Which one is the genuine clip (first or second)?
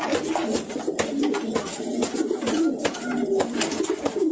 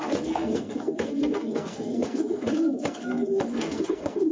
first